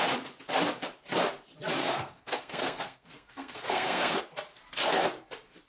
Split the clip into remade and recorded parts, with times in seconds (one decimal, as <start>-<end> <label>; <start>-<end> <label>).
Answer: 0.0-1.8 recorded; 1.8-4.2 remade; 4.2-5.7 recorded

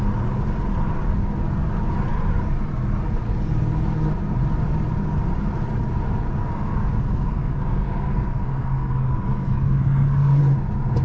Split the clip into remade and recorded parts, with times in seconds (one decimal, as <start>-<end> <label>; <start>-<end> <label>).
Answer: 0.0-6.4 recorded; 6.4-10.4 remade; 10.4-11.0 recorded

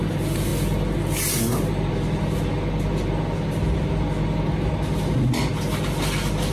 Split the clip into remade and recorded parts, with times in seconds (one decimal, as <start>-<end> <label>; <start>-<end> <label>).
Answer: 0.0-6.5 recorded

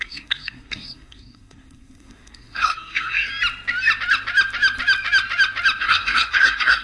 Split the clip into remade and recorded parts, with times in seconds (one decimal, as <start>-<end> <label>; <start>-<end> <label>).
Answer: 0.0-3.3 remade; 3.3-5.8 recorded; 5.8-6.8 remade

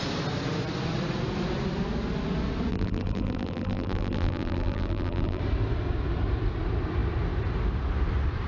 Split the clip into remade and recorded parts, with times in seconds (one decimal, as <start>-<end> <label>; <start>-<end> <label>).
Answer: 0.0-2.7 recorded; 2.7-5.4 remade; 5.4-8.5 recorded

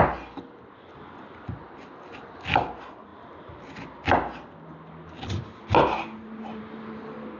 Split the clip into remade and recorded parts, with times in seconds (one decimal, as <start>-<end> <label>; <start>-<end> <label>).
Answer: 0.0-7.4 recorded